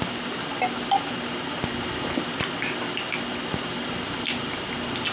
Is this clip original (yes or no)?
yes